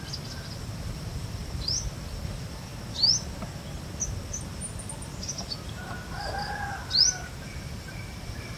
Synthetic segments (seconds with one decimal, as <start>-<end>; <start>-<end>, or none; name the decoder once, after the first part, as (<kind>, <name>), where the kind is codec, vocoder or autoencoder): 0.0-2.7 (vocoder, BigVGAN v2); 7.6-8.6